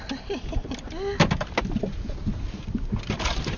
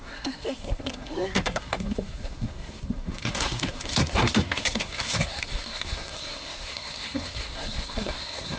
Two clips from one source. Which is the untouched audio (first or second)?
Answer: first